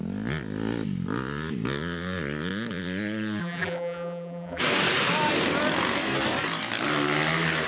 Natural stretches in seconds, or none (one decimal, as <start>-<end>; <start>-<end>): 0.0-3.4; 4.6-7.7